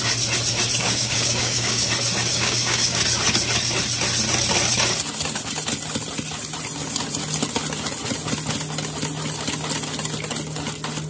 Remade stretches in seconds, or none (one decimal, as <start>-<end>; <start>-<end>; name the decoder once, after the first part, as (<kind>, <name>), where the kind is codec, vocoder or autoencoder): 0.8-1.9 (codec, DAC); 2.3-3.0